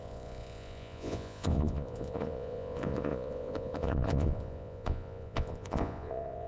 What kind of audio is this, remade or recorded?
remade